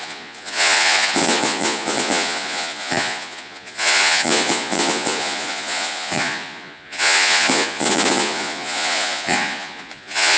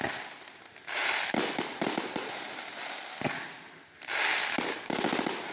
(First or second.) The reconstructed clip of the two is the first